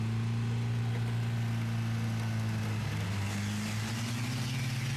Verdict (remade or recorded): recorded